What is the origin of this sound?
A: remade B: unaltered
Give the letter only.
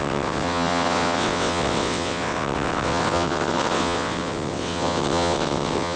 A